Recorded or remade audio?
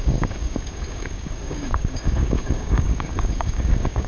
remade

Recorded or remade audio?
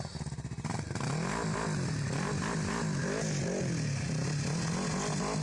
recorded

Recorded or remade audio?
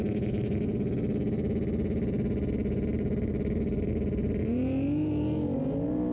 recorded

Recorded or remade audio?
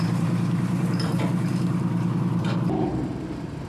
remade